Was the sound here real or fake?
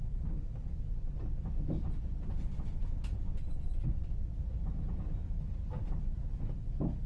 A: real